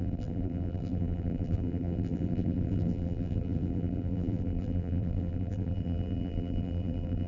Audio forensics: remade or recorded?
remade